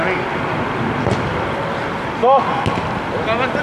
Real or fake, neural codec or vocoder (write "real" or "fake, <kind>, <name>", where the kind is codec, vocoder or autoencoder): real